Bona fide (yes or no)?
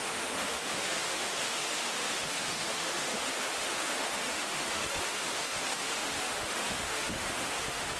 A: no